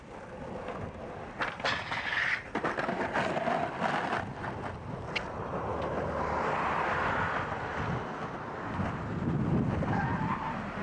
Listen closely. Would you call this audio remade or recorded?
recorded